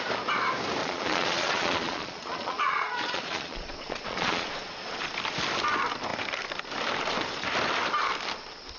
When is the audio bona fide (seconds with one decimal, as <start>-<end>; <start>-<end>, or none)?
0.0-0.8; 5.0-8.8